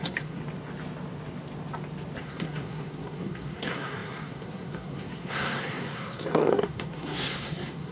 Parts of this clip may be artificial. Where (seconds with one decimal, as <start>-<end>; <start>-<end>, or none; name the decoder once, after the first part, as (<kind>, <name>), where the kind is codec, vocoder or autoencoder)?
0.0-0.4 (codec, SNAC); 2.2-7.9